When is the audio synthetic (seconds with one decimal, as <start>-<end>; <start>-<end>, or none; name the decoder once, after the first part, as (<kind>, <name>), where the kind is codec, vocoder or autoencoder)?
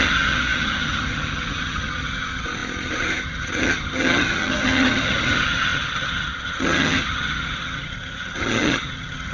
0.0-9.3 (vocoder, HiFi-GAN)